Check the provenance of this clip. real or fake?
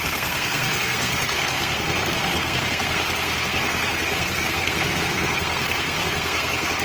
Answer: fake